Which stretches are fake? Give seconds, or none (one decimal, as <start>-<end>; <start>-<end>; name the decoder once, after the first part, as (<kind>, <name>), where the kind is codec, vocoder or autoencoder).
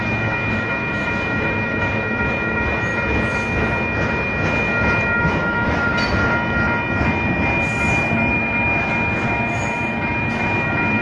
0.0-2.9 (autoencoder, DAC-VAE); 5.2-5.9; 8.3-11.0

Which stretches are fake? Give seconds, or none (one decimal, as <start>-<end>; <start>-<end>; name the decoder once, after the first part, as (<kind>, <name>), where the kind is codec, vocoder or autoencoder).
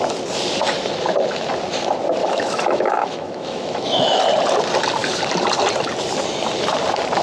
2.2-4.2 (autoencoder, DAC-VAE)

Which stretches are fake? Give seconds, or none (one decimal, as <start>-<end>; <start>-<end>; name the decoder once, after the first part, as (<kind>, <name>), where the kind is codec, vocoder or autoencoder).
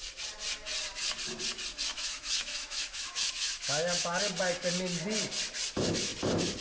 1.9-4.2 (autoencoder, DAC-VAE)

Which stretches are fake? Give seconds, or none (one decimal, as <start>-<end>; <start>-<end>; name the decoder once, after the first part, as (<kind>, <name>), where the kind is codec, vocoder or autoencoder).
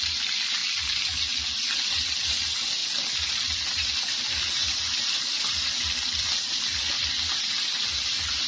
none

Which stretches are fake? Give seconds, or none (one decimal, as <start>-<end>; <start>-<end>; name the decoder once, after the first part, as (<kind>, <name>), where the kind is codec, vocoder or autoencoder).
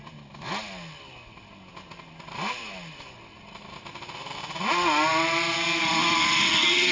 none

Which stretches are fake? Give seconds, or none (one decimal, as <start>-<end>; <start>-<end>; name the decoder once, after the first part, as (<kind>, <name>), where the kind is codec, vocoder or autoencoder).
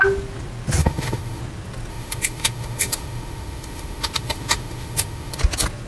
0.8-1.4 (autoencoder, DAC-VAE); 1.9-5.4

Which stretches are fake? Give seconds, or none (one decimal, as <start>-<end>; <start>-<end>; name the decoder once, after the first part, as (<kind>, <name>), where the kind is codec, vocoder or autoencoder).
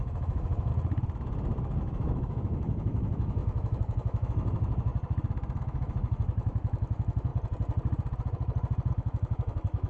0.0-0.7 (autoencoder, DAC-VAE); 1.8-4.9; 5.6-7.3; 8.9-9.9